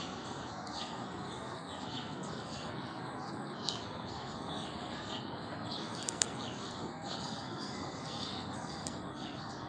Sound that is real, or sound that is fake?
fake